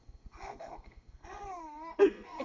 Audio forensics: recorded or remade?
remade